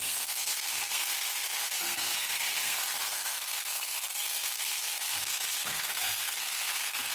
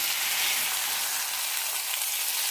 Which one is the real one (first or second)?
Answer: second